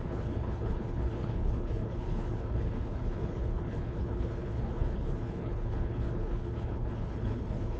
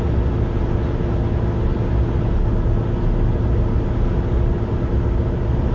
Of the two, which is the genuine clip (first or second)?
second